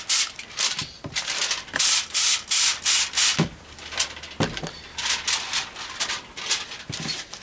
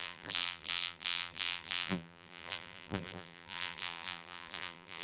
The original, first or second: first